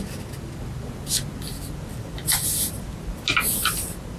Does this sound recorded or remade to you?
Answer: recorded